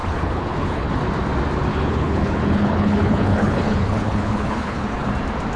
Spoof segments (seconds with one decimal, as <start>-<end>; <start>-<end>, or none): 0.0-0.9; 1.7-5.1